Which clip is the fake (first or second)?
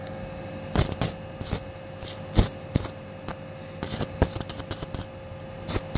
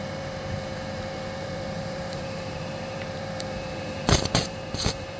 second